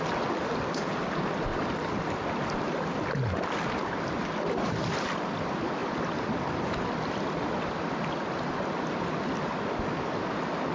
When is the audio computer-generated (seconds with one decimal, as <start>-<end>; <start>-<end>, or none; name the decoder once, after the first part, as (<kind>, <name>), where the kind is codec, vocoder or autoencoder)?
1.5-2.2 (vocoder, BigVGAN v2); 5.8-10.1